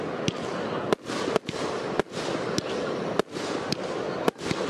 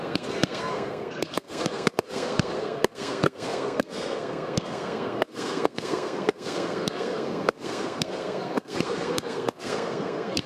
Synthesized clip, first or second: second